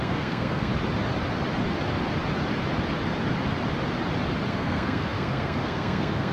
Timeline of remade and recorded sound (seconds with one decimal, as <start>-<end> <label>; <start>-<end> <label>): 0.0-0.7 remade; 0.7-4.5 recorded; 4.5-6.3 remade